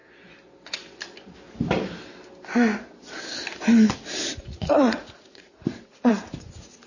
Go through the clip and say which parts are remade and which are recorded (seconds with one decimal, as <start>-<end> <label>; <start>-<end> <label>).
0.0-4.2 recorded; 4.2-6.1 remade; 6.1-6.9 recorded